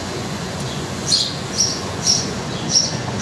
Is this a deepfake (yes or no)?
yes